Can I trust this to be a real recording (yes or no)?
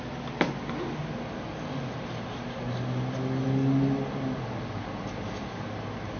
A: yes